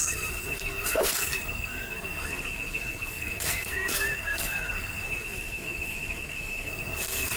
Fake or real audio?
fake